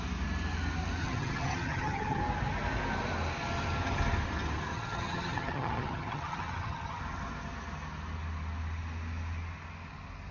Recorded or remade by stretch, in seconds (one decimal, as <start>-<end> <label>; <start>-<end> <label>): 0.0-1.0 recorded; 1.0-2.2 remade; 2.2-4.7 recorded; 4.7-7.0 remade; 7.0-10.3 recorded